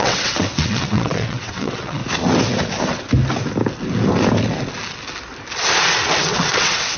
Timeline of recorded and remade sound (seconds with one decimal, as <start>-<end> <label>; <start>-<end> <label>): 0.0-2.0 remade; 2.0-6.2 recorded; 6.2-7.0 remade